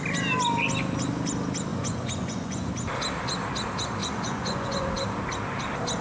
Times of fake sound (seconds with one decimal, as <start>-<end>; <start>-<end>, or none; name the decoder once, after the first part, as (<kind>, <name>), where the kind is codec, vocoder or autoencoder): 1.7-2.7 (vocoder, Vocos); 4.0-4.9